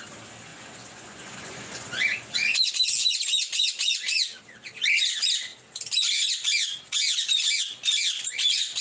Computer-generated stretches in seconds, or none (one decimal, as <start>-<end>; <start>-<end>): 0.5-2.7